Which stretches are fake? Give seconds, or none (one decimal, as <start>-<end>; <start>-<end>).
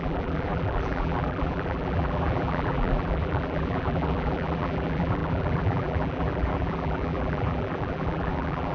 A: 0.0-8.7